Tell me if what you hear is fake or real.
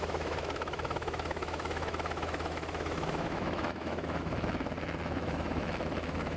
fake